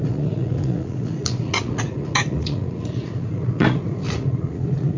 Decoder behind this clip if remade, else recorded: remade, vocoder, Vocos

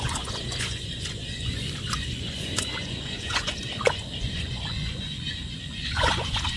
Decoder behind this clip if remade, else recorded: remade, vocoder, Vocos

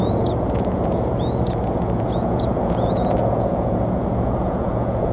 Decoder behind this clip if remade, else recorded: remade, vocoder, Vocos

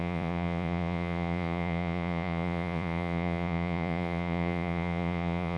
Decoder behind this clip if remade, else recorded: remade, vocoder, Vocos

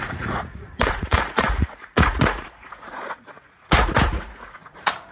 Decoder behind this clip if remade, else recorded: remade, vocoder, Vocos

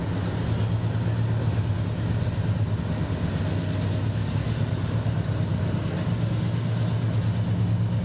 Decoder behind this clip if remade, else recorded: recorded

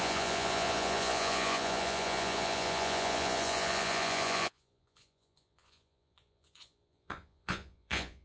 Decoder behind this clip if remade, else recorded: remade, vocoder, Vocos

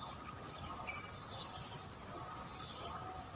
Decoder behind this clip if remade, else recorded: recorded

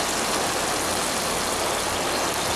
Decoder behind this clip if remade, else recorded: recorded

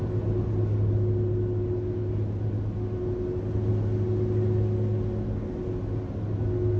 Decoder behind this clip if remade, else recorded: recorded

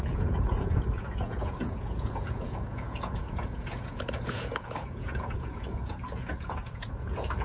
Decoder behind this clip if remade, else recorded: remade, vocoder, Vocos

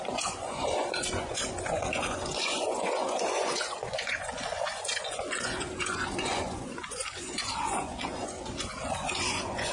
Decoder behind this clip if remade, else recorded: remade, vocoder, Vocos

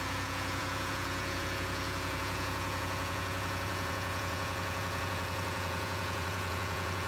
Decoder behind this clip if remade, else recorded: remade, vocoder, Vocos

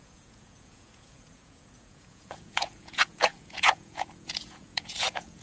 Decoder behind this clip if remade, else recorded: remade, vocoder, Vocos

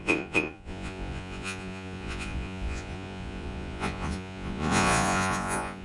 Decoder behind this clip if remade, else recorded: remade, vocoder, Vocos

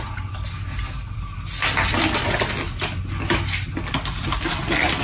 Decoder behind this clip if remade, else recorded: recorded